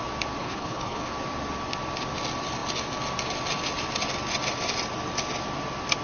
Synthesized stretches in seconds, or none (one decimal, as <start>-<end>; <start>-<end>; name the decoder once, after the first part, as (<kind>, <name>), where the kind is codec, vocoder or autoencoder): 0.4-1.1 (codec, HILCodec)